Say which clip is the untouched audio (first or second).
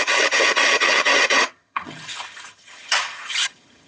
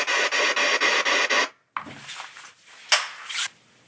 second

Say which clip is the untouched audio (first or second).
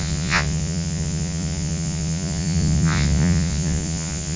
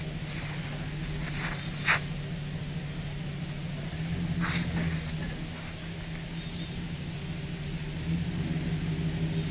second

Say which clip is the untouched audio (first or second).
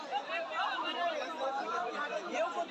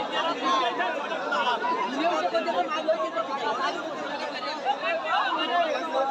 second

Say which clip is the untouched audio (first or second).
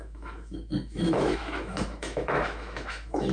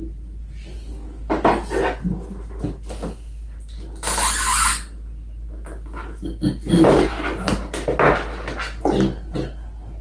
second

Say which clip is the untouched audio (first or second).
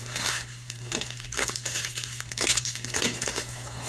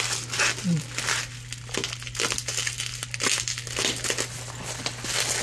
second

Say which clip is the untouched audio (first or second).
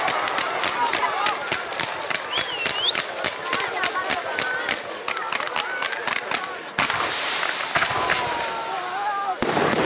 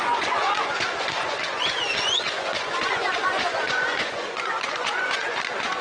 first